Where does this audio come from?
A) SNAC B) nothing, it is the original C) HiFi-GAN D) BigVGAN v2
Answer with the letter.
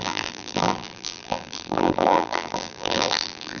D